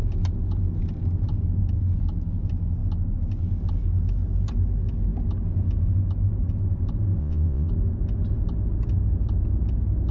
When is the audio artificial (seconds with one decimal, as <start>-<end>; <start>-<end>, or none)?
7.2-7.7